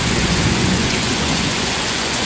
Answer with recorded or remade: remade